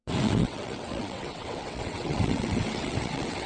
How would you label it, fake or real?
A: fake